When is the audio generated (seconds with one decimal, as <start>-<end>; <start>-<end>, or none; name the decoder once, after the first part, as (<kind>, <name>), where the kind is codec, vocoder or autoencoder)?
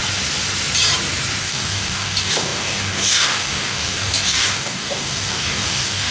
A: 1.4-6.1 (codec, DAC)